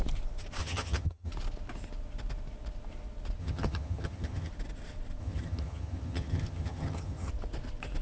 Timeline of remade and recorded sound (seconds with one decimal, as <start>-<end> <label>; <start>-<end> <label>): 0.0-0.6 recorded; 0.6-1.3 remade; 1.3-3.4 recorded; 3.4-4.5 remade; 4.5-5.2 recorded; 5.2-7.3 remade; 7.3-8.0 recorded